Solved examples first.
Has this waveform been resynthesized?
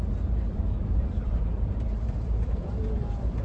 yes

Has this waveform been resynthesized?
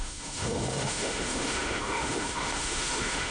yes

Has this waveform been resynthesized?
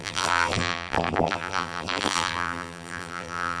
yes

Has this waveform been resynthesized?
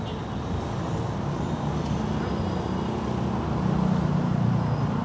no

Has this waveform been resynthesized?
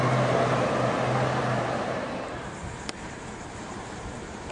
yes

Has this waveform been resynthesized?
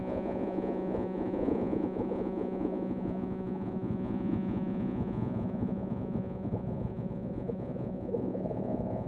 yes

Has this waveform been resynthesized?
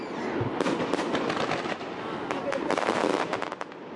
no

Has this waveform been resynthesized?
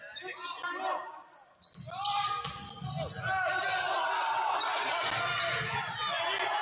no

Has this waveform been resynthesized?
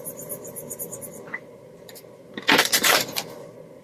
yes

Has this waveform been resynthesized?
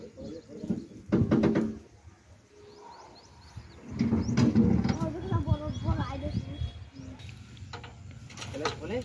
no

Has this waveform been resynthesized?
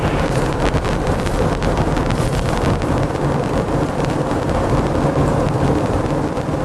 yes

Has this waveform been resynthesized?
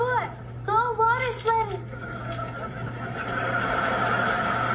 no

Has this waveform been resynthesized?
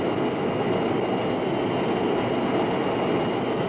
no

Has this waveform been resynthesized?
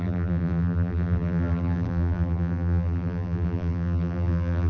yes